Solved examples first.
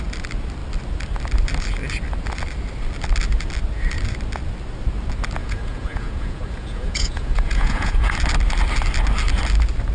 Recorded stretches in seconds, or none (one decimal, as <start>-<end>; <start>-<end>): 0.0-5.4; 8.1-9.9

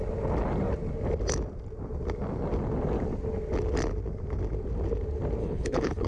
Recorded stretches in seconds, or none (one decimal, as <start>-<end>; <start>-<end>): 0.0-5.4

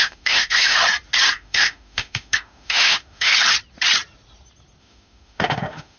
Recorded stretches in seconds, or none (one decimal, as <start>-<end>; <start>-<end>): 0.8-1.3; 3.3-4.8

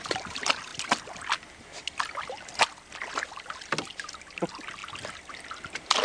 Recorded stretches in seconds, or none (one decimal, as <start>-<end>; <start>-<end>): 0.0-6.0